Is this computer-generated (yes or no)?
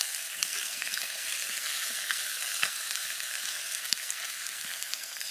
yes